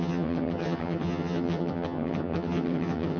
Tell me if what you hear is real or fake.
fake